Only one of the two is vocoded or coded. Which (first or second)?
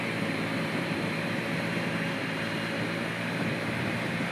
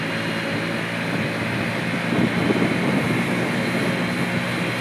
first